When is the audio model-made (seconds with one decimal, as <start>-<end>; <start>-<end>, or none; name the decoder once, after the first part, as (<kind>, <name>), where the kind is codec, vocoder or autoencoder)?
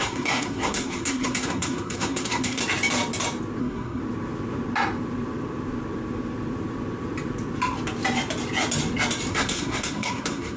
0.0-2.6 (codec, SNAC); 3.6-4.0; 9.3-10.6